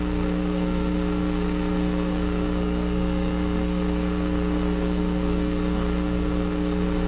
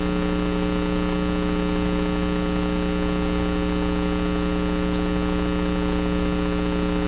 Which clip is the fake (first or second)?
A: first